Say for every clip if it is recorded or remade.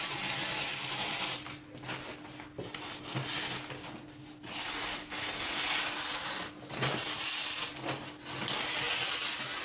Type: recorded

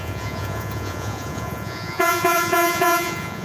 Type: remade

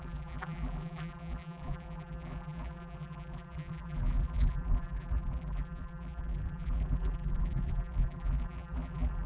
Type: remade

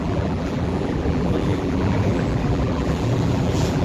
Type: remade